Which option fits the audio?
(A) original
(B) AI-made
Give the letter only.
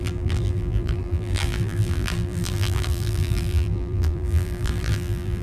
B